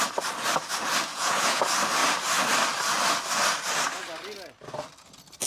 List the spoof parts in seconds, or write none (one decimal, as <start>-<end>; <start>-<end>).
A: 1.1-1.6